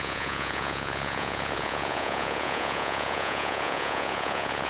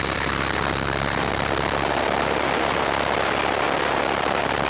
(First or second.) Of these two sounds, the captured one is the second